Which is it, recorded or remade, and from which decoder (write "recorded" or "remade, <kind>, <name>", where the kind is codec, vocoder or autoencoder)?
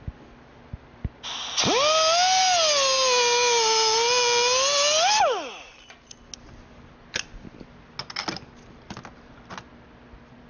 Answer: recorded